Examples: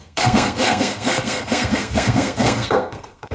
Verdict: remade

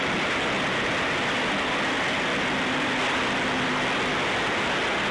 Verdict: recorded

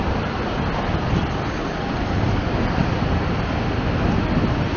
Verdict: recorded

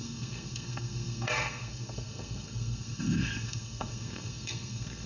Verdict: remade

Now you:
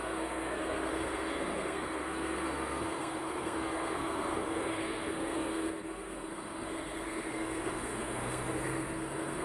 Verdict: remade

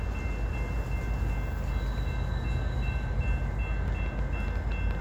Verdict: recorded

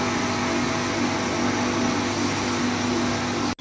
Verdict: recorded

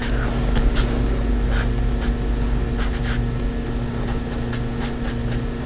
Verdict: recorded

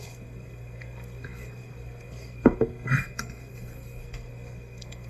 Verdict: remade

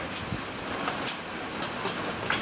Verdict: recorded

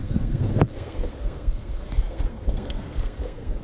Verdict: remade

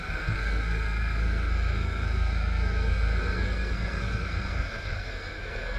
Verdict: remade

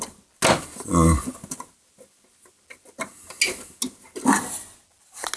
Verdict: recorded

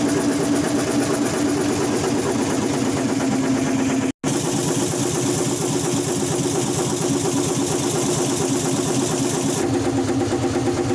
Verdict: recorded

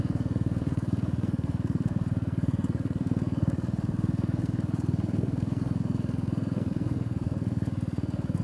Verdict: remade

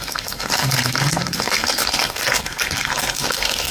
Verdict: remade